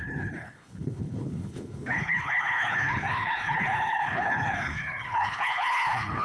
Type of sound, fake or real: fake